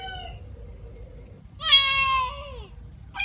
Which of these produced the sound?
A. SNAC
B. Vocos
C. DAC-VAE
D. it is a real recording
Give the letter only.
D